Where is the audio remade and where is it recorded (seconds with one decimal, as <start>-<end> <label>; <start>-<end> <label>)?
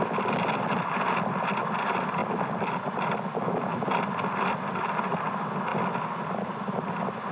0.0-7.3 recorded